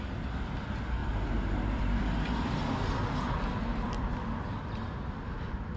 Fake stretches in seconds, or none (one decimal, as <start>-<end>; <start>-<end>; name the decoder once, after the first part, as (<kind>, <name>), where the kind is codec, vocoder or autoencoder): 1.0-2.0 (vocoder, BigVGAN v2); 3.7-4.2